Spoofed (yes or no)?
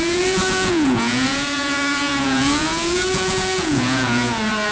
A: yes